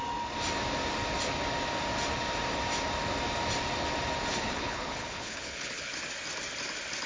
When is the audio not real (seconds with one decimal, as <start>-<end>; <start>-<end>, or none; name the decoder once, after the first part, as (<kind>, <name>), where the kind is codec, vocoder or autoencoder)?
4.3-5.9 (codec, HILCodec)